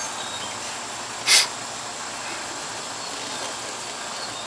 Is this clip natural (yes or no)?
yes